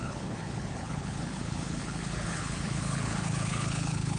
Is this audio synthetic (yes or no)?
yes